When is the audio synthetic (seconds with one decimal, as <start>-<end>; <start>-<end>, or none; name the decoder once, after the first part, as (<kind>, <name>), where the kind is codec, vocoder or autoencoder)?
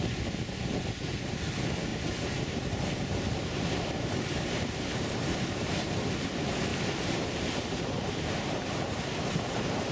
1.9-5.9 (vocoder, BigVGAN v2); 6.7-8.8